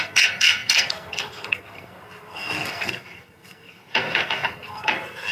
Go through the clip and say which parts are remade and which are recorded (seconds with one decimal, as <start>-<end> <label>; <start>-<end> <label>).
0.0-5.3 remade